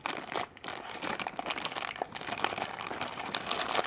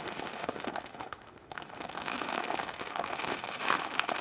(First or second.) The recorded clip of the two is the first